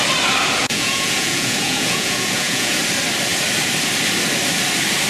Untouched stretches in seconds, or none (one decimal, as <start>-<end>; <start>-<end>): 0.0-0.6; 2.8-5.1